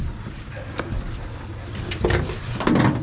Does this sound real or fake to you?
real